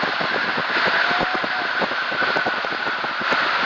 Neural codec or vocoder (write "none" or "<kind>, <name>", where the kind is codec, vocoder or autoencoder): none